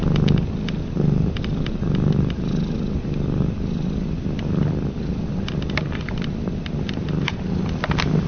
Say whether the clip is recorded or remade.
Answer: recorded